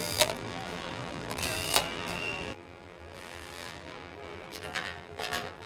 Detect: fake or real fake